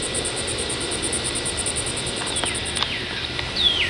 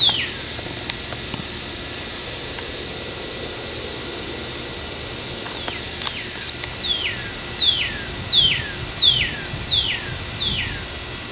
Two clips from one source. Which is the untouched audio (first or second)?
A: second